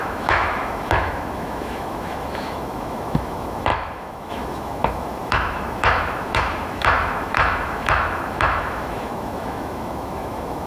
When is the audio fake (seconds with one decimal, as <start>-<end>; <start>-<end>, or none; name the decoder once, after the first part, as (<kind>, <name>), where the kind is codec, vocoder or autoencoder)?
0.0-10.7 (autoencoder, DAC-VAE)